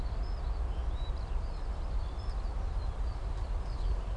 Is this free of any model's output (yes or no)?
yes